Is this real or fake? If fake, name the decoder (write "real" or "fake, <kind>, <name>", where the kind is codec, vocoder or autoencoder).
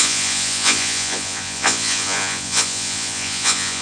fake, vocoder, Vocos